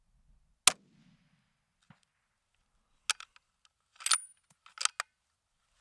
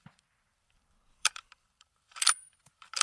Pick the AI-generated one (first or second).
second